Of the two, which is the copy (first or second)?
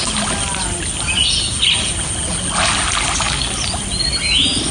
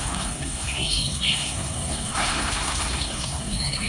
second